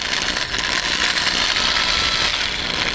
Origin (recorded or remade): recorded